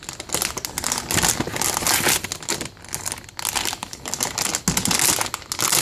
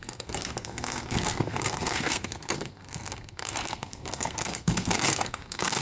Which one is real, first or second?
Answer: first